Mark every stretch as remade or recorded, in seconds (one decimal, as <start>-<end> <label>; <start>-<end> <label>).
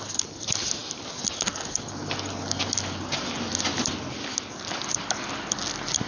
0.0-6.1 recorded